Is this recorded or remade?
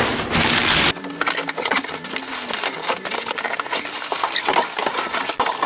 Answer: recorded